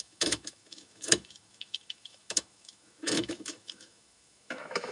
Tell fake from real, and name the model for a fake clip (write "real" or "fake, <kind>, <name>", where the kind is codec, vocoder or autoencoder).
fake, autoencoder, DAC-VAE